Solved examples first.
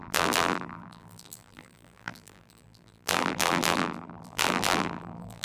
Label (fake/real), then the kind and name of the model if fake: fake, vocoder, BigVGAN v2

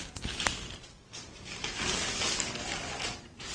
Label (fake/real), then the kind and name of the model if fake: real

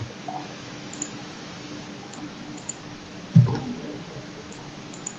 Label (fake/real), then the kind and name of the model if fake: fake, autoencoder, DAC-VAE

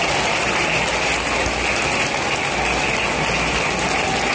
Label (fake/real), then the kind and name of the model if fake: real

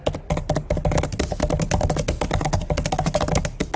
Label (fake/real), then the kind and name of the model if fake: real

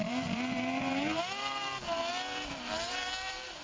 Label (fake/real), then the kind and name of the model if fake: fake, vocoder, BigVGAN v2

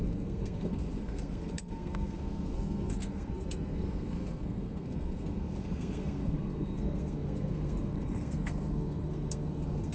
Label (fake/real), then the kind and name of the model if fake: fake, codec, SNAC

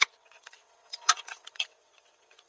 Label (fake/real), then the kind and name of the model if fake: fake, vocoder, WaveNeXt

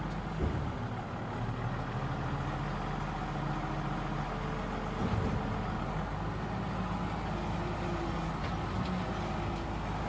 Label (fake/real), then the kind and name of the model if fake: real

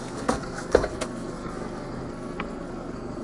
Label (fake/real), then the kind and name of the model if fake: fake, codec, SNAC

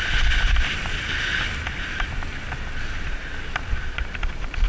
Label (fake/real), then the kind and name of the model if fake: real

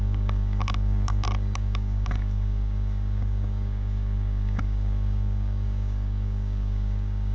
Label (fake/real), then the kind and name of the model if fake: fake, codec, DAC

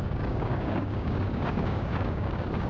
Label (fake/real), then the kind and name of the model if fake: fake, codec, DAC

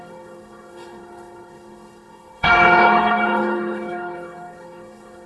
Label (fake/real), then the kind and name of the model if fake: fake, codec, HILCodec